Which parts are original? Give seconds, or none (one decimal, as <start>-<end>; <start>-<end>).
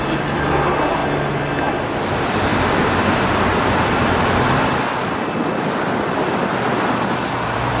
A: 0.0-2.5; 3.9-7.8